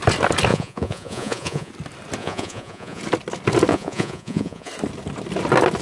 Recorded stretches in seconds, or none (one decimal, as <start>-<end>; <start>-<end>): 0.0-0.5; 1.7-2.2; 3.0-3.7; 4.7-5.8